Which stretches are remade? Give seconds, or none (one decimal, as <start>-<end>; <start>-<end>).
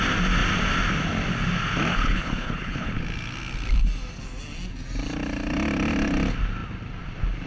1.9-3.0